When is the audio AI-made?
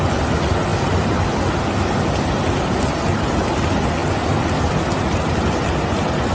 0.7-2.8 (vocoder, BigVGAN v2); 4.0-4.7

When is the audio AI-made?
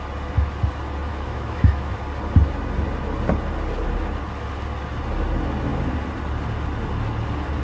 1.1-2.0 (autoencoder, DAC-VAE)